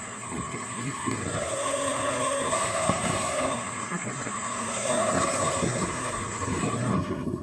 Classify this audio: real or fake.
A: fake